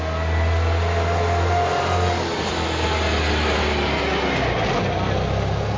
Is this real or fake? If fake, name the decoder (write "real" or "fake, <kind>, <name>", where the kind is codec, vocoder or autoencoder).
real